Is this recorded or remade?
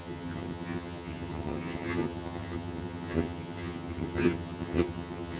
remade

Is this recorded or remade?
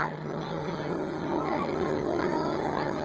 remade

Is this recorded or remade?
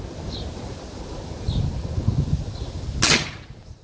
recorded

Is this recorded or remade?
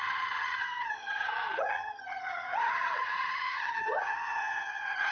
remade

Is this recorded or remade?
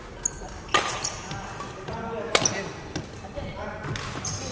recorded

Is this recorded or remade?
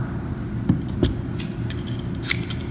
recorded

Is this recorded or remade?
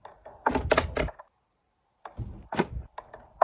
recorded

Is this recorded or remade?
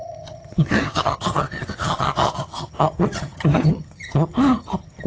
remade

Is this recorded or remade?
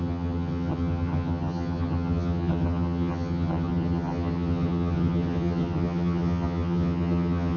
remade